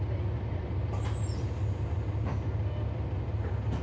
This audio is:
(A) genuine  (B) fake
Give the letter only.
A